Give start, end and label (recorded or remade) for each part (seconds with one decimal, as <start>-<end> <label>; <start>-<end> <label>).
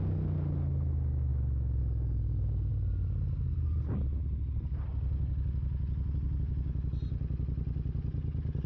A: 0.0-8.7 recorded